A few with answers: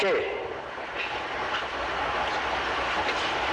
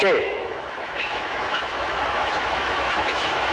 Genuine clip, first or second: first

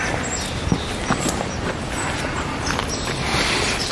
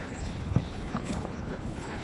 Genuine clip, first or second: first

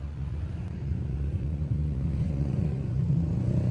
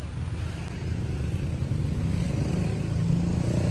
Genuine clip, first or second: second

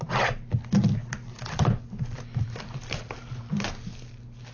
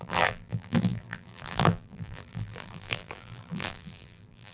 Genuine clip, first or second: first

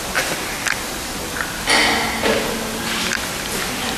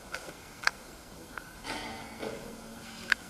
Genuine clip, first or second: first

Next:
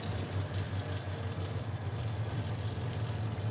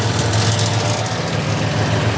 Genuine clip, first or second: second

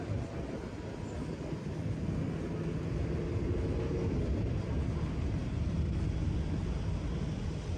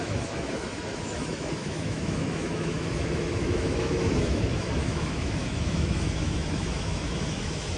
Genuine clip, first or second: first